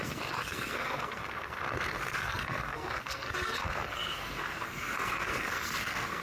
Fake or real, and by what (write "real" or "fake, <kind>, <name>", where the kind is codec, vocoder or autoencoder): fake, codec, SNAC